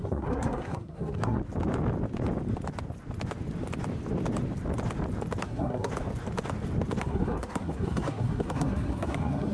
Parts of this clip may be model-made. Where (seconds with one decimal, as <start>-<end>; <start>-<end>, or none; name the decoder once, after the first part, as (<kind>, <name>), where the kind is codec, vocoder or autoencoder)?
0.0-1.4 (codec, SNAC); 5.4-5.9; 7.0-9.5